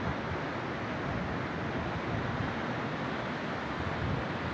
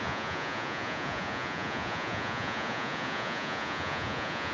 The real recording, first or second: first